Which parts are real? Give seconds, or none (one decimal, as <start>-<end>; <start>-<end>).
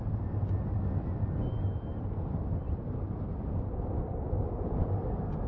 0.0-5.5